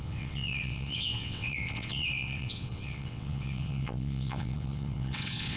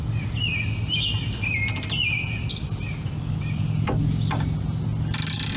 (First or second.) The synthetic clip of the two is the first